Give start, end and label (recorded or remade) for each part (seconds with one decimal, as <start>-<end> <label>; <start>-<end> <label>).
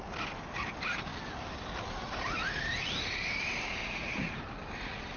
0.0-1.1 recorded; 1.1-4.2 remade; 4.2-5.2 recorded